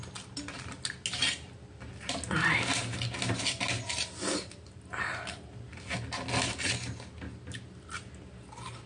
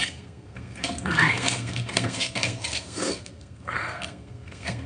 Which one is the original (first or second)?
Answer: first